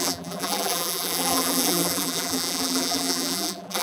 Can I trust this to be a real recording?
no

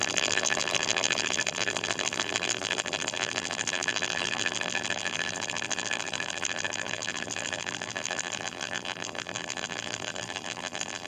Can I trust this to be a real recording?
no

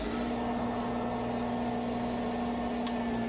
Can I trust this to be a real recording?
yes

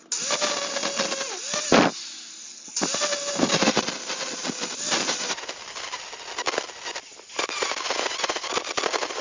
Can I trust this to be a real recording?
yes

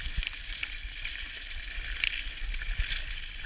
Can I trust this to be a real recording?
no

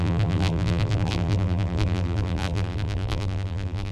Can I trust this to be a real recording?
no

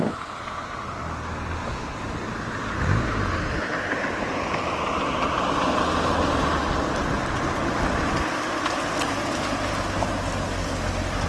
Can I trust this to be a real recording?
yes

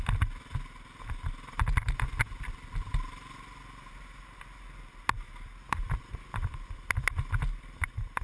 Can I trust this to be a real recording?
yes